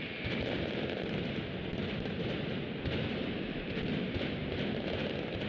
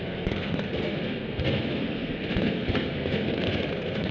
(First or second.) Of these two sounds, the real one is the first